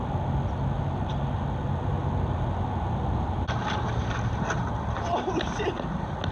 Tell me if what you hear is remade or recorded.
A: recorded